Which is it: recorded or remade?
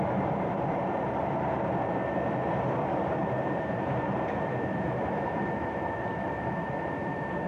remade